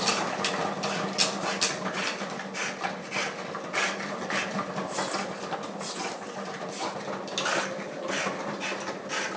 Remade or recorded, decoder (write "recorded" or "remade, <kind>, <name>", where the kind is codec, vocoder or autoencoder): recorded